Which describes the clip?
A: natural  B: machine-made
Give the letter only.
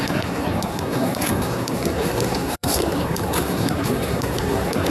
B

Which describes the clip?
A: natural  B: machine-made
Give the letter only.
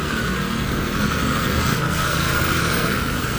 B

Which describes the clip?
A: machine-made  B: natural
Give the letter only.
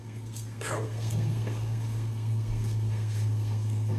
A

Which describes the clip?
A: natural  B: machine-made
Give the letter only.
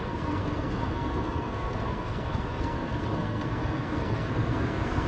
B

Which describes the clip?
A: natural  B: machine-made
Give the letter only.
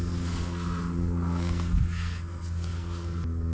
B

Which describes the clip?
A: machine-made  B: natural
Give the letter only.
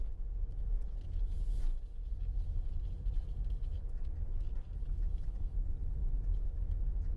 B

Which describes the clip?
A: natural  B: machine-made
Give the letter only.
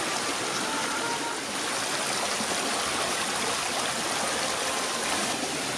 A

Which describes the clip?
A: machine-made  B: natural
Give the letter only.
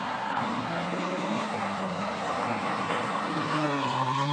A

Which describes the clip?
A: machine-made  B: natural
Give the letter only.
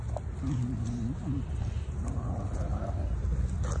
B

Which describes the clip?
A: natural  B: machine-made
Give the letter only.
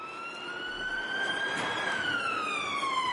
A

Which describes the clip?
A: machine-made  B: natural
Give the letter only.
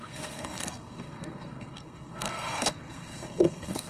A